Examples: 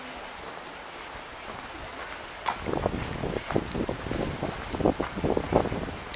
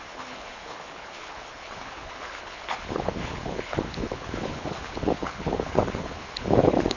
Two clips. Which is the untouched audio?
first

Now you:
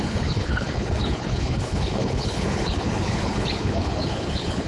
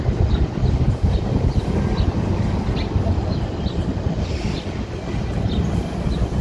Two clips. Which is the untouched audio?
second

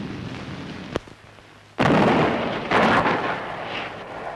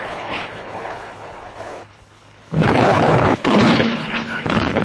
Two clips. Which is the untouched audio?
first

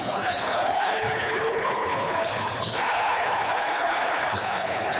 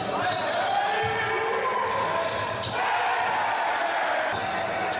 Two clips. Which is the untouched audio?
second